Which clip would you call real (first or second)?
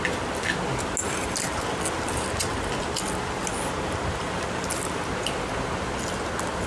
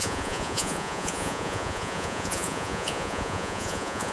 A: first